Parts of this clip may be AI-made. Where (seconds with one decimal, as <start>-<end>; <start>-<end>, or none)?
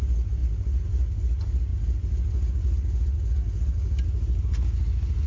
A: none